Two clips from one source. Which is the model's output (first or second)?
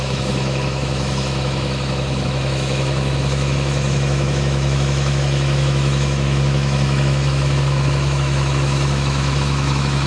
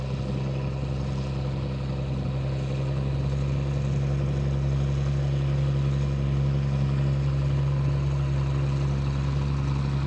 first